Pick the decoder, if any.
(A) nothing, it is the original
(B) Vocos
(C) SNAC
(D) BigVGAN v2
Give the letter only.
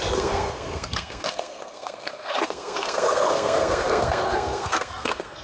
C